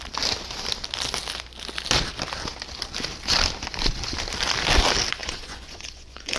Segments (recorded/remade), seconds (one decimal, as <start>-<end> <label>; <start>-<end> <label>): 0.0-5.2 recorded; 5.2-6.4 remade